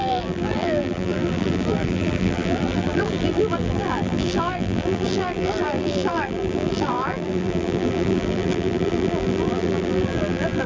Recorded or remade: remade